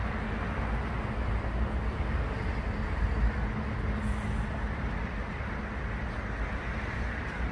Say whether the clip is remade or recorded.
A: recorded